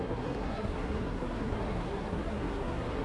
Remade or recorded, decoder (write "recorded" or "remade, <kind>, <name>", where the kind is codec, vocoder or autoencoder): remade, codec, SNAC